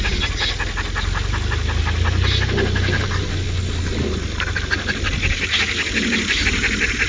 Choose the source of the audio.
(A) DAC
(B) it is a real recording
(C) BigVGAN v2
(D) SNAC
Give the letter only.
B